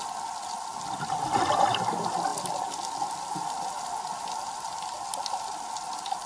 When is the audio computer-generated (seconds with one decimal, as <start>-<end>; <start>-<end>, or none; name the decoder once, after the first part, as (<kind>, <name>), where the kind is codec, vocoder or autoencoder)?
none